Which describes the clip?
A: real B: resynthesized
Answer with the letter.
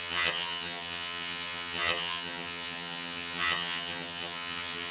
B